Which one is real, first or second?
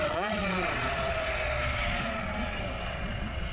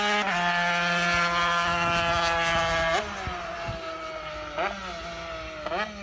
second